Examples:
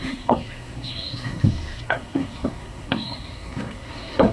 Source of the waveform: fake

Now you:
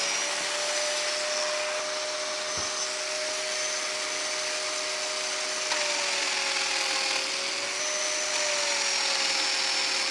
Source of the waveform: real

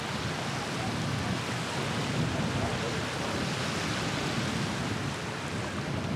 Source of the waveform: real